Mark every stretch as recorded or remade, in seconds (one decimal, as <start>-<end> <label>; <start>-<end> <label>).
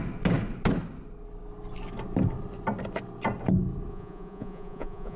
0.0-3.9 recorded; 3.9-5.2 remade